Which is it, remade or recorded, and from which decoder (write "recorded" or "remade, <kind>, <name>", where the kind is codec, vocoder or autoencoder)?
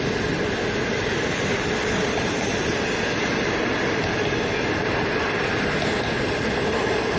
recorded